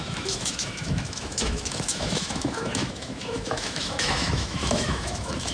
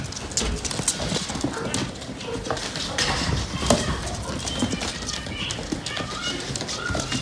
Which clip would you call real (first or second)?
second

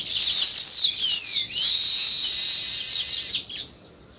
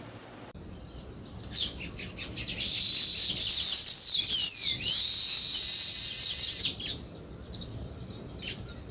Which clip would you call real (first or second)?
first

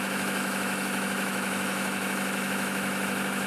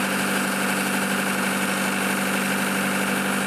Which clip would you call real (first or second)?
second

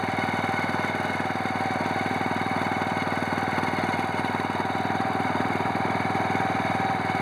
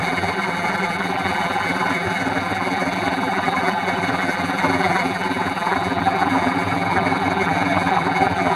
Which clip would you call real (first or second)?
first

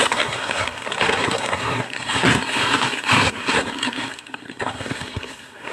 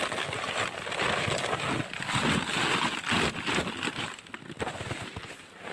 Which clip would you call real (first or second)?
second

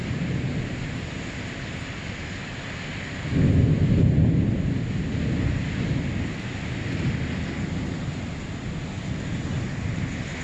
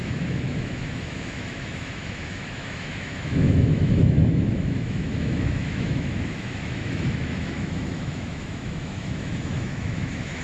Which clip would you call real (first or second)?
first